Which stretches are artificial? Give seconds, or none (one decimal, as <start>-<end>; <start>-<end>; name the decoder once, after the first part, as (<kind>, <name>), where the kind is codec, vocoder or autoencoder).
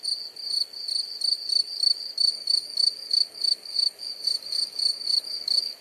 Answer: 2.3-5.8 (codec, DAC)